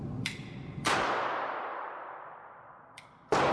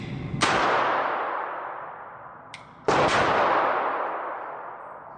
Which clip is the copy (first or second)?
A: first